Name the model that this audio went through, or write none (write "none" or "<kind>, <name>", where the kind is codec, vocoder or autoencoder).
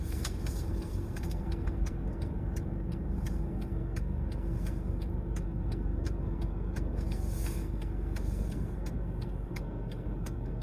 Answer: codec, SNAC